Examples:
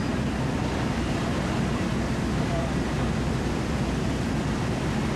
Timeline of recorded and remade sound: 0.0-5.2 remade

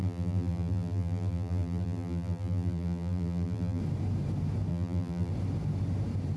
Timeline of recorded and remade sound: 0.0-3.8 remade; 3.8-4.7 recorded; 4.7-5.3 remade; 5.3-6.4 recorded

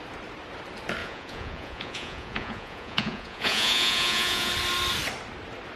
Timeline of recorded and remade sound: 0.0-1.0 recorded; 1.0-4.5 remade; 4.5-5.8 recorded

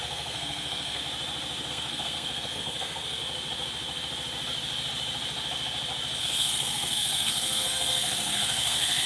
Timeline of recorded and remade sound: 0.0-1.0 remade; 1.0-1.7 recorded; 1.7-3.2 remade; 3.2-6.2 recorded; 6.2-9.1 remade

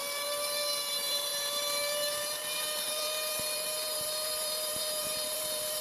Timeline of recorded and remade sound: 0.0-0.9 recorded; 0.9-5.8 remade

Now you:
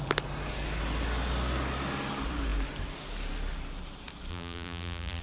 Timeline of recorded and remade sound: 0.0-4.3 recorded; 4.3-5.2 remade

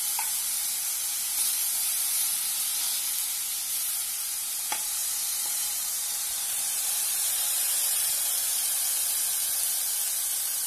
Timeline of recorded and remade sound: 0.0-5.0 recorded; 5.0-8.9 remade; 8.9-10.7 recorded